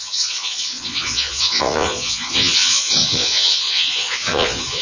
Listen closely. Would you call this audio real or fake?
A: fake